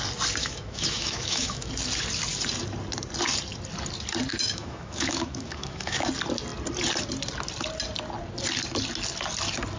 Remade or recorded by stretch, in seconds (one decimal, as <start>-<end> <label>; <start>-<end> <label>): 0.0-0.4 recorded; 0.4-1.7 remade; 1.7-4.3 recorded; 4.3-6.1 remade; 6.1-9.8 recorded